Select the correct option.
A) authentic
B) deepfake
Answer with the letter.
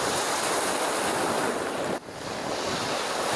A